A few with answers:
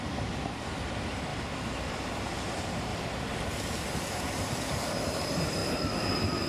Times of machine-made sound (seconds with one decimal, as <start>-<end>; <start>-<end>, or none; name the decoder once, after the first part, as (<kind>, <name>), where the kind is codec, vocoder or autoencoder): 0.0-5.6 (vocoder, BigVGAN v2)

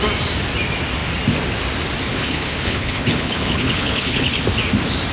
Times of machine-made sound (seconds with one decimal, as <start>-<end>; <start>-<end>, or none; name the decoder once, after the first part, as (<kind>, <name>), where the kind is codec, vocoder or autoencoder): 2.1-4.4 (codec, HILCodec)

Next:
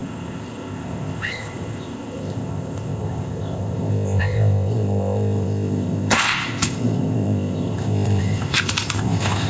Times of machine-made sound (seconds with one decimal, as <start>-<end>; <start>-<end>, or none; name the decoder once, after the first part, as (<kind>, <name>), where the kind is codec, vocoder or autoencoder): 0.0-9.5 (codec, ZipCodec)